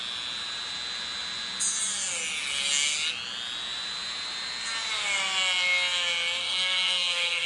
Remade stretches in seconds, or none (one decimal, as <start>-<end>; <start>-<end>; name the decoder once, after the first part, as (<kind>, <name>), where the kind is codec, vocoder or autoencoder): 6.4-7.5 (codec, SNAC)

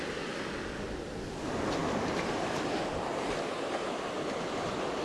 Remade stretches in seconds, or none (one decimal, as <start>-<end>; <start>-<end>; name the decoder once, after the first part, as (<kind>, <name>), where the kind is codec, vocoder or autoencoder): none

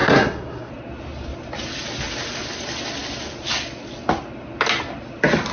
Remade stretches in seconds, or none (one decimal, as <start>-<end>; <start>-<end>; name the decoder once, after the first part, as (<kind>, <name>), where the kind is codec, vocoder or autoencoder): 0.0-0.7 (codec, SNAC)

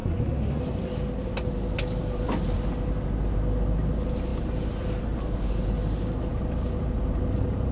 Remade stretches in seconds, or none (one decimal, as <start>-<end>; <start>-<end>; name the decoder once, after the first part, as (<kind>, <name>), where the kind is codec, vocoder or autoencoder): 0.0-0.6 (codec, SNAC)